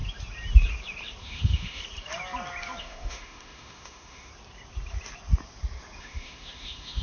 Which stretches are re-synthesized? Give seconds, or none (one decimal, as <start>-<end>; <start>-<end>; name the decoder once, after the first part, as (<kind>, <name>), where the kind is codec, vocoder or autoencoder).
1.2-1.8 (autoencoder, DAC-VAE); 2.8-4.3; 6.0-7.0